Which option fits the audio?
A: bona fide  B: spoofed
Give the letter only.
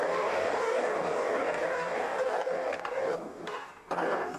B